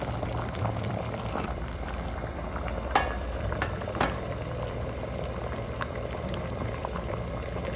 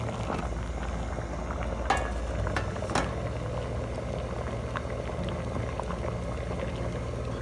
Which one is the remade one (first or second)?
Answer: first